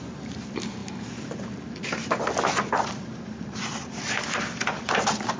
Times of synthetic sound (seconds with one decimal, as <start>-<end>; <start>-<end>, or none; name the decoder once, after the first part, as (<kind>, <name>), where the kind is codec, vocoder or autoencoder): none